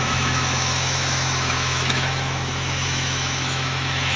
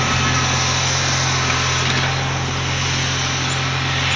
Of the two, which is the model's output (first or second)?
first